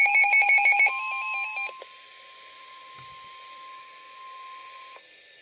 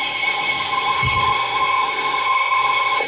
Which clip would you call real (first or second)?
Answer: first